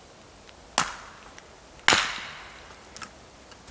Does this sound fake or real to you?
real